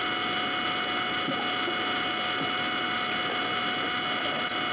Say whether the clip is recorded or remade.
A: recorded